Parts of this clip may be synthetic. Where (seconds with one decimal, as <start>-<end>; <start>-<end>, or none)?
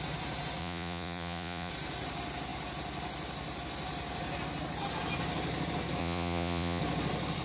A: 0.6-1.7; 6.0-6.8